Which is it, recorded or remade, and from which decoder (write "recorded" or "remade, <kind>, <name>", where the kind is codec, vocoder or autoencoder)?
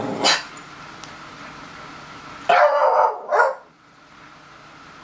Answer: recorded